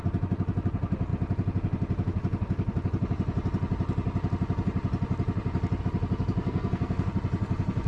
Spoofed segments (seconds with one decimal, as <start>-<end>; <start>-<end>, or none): 6.4-7.1